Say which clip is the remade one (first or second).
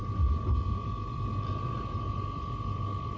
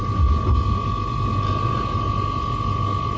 first